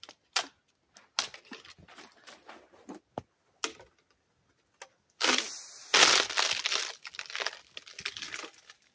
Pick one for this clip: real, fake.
real